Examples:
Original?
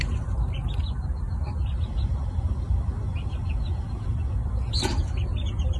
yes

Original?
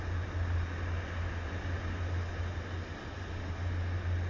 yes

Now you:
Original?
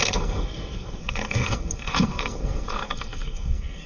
no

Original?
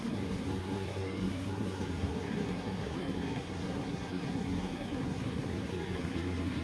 no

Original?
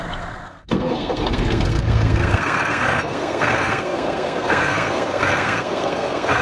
no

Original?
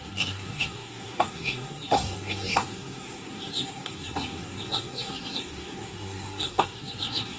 no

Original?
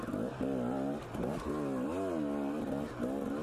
yes